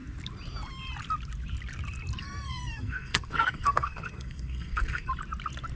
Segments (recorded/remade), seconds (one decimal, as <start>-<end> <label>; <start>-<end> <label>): 0.0-2.2 recorded; 2.2-5.1 remade; 5.1-5.8 recorded